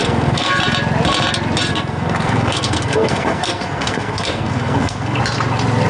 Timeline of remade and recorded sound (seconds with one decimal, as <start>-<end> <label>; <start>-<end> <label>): 0.0-0.5 remade; 0.5-1.7 recorded; 1.7-5.2 remade; 5.2-5.9 recorded

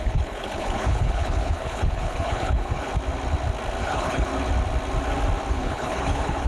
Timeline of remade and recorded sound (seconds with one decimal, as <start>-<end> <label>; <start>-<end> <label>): 0.0-2.9 remade; 2.9-3.8 recorded; 3.8-4.3 remade; 4.3-5.5 recorded; 5.5-6.5 remade

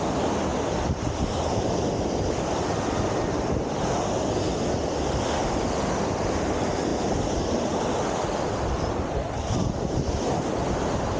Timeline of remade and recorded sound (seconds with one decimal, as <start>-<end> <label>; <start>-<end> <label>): 0.0-11.2 recorded

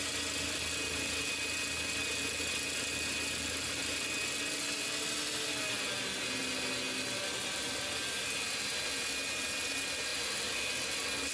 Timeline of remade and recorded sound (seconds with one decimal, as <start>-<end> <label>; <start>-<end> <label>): 0.0-11.3 recorded